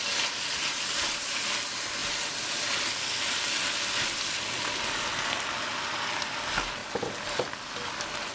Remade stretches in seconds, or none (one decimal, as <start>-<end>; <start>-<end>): none